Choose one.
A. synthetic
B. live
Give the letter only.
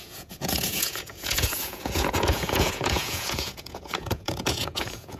A